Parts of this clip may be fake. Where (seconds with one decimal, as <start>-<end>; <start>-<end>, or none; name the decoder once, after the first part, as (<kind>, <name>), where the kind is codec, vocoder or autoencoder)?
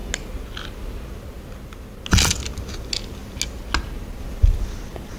none